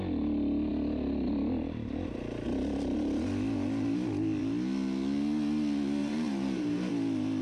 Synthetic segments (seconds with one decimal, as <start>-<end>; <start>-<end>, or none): 6.0-6.9

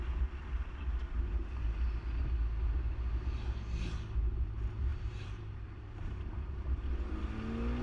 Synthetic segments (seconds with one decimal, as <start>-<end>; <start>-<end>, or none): 4.9-6.7

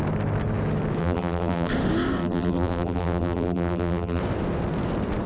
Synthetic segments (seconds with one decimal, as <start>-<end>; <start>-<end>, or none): 1.0-1.7; 2.2-4.2

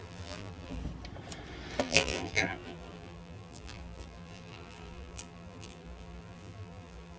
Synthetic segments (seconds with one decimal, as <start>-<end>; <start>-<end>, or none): 0.0-0.8; 1.8-7.2

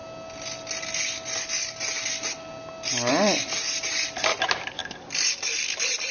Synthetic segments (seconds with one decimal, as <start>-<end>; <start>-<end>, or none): none